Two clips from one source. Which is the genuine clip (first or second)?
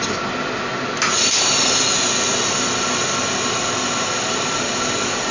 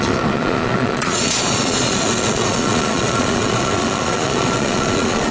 first